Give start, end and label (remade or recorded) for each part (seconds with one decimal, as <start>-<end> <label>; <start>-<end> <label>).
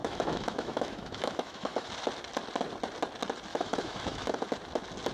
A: 0.0-1.9 remade; 1.9-3.5 recorded; 3.5-4.4 remade; 4.4-5.1 recorded